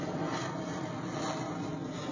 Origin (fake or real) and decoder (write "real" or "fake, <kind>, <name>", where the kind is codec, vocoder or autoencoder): real